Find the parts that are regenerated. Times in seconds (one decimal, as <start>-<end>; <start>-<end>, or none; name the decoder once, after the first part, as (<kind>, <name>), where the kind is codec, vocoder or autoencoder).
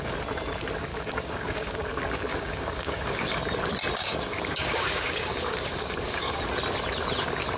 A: 0.9-1.9 (codec, DAC); 2.3-3.4; 4.0-6.4